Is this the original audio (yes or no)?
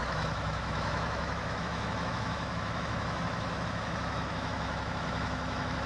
no